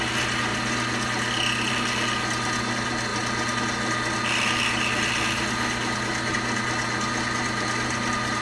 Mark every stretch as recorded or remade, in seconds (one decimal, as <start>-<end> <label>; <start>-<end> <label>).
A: 0.0-8.4 recorded